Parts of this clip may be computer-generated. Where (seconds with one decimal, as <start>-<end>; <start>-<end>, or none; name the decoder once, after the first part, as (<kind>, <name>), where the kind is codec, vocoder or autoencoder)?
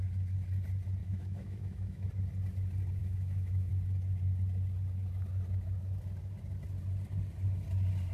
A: 1.0-2.1 (autoencoder, DAC-VAE); 3.0-3.7